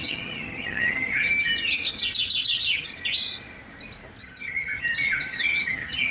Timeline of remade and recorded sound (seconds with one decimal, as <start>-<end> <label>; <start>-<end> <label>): 0.0-1.5 remade; 1.5-2.4 recorded; 2.4-2.9 remade; 2.9-4.2 recorded; 4.2-6.1 remade